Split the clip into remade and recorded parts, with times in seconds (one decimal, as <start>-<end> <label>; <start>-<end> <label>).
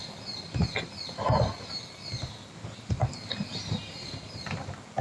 0.0-3.6 recorded; 3.6-4.4 remade; 4.4-5.0 recorded